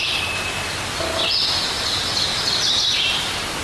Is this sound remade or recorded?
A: recorded